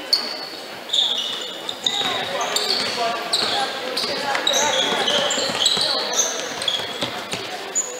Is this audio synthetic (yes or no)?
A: no